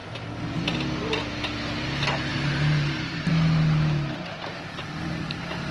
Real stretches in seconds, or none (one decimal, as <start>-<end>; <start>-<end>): 0.0-2.3; 3.3-5.7